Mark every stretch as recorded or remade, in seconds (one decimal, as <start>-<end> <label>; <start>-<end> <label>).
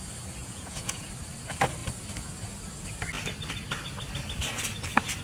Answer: 0.0-0.4 recorded; 0.4-1.1 remade; 1.1-5.2 recorded